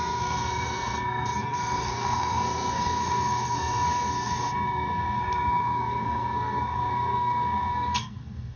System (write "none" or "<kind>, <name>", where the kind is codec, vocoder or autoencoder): codec, SNAC